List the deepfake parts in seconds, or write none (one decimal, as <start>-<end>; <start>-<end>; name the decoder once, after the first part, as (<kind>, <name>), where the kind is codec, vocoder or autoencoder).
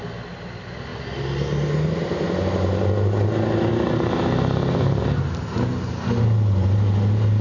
none